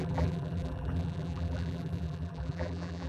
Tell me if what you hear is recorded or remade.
remade